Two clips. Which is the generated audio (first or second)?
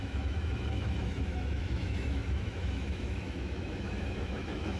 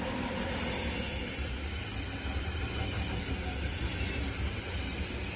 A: first